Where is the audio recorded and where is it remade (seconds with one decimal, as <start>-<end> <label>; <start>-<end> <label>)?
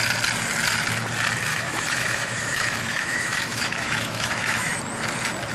0.0-1.5 recorded; 1.5-4.8 remade; 4.8-5.5 recorded